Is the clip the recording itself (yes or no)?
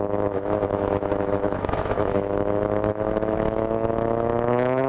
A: no